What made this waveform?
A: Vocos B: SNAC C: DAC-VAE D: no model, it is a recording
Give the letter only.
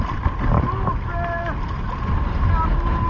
D